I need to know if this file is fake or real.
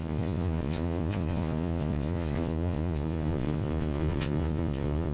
fake